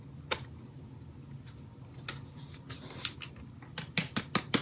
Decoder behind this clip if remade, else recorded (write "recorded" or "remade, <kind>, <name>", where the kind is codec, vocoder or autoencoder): recorded